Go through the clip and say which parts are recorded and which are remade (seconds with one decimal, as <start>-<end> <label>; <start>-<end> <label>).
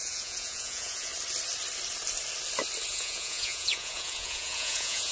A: 0.0-1.1 remade; 1.1-2.9 recorded; 2.9-5.1 remade